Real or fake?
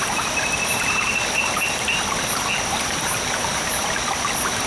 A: real